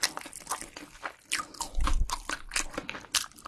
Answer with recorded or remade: recorded